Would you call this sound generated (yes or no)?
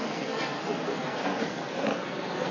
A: yes